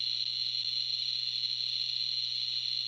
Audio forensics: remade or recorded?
recorded